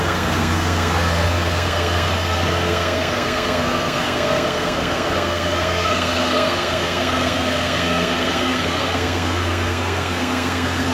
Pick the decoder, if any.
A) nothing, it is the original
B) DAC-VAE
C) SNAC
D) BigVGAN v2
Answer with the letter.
C